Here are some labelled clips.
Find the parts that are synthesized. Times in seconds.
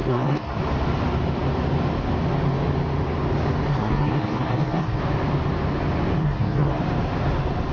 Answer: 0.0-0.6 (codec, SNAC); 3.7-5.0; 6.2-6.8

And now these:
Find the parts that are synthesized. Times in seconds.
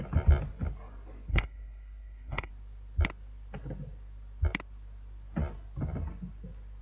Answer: 1.3-2.5 (codec, SNAC)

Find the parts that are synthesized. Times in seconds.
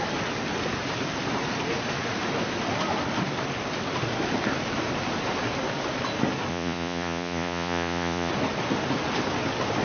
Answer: 6.5-8.3 (vocoder, Vocos)